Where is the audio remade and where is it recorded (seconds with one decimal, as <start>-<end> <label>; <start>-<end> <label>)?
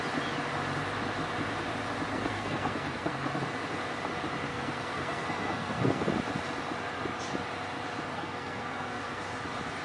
0.0-2.1 recorded; 2.1-3.4 remade; 3.4-4.5 recorded; 4.5-6.1 remade; 6.1-8.1 recorded; 8.1-9.2 remade; 9.2-9.8 recorded